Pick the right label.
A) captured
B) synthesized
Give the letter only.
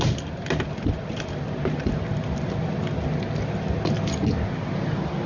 A